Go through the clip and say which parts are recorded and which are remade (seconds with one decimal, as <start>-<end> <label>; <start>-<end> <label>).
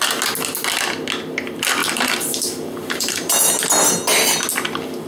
0.0-1.8 recorded; 1.8-3.5 remade; 3.5-5.1 recorded